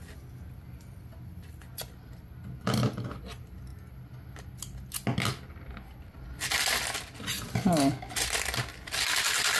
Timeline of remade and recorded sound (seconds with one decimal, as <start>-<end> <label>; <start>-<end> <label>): 0.0-9.6 recorded